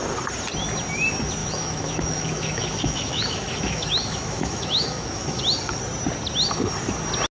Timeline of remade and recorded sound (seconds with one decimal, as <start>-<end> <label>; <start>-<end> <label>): 0.0-1.4 recorded; 1.4-5.4 remade; 5.4-7.4 recorded